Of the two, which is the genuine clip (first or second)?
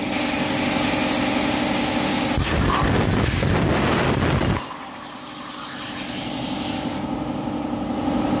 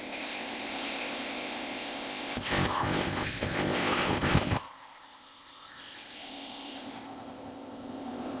first